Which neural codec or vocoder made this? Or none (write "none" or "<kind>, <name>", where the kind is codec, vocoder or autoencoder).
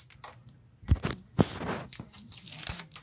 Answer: none